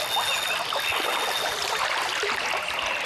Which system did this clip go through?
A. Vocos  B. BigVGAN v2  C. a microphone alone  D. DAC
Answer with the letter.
C